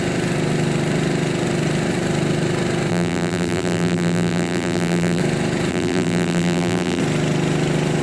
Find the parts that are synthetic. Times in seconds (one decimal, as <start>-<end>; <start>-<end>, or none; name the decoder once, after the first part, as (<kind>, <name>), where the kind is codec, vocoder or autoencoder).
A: 2.9-5.2 (vocoder, BigVGAN v2); 5.7-7.0